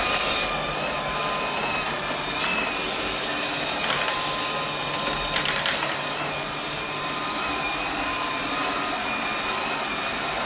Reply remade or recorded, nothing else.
recorded